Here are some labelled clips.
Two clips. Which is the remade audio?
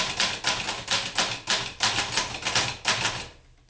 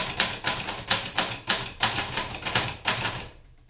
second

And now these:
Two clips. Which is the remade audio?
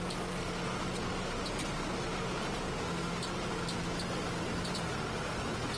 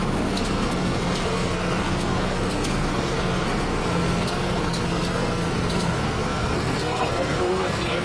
second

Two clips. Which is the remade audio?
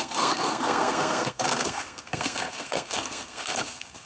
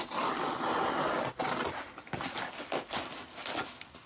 first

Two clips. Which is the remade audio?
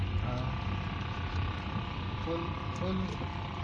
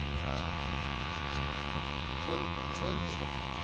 second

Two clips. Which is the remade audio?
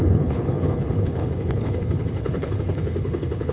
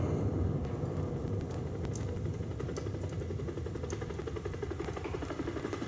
first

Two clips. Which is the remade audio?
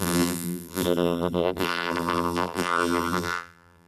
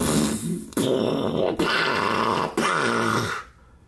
first